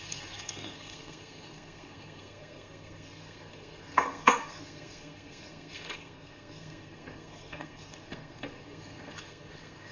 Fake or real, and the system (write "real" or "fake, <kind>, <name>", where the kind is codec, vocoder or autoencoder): fake, codec, SNAC